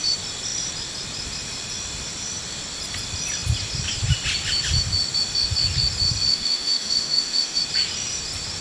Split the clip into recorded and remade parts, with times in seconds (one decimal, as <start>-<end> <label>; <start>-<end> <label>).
0.0-6.3 recorded; 6.3-7.6 remade; 7.6-8.6 recorded